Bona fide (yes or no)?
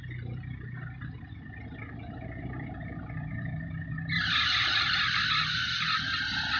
yes